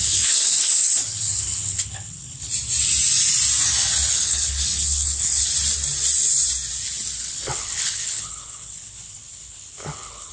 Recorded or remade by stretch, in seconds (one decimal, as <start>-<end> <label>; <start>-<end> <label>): 0.0-2.5 remade; 2.5-4.1 recorded; 4.1-5.5 remade; 5.5-7.2 recorded; 7.2-10.3 remade